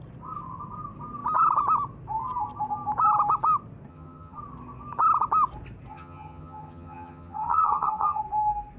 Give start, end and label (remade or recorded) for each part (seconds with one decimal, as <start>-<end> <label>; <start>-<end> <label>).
0.0-3.9 recorded; 3.9-4.4 remade; 4.4-5.9 recorded; 5.9-8.2 remade; 8.2-8.8 recorded